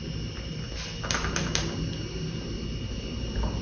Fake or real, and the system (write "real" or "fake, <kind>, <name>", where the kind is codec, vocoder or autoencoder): real